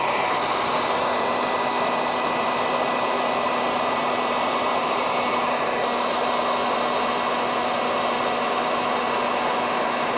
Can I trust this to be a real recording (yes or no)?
yes